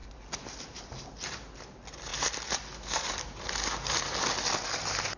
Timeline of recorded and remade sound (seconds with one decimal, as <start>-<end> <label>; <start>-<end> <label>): 0.0-5.2 recorded